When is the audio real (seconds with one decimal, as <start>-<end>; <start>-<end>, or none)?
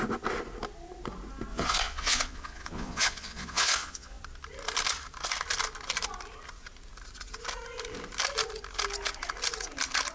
0.0-1.5; 4.2-10.1